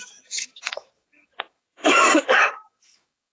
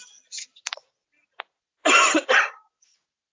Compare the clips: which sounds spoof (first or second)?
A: first